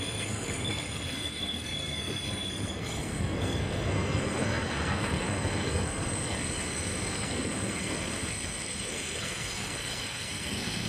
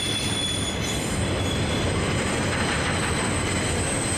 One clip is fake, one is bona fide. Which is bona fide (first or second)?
second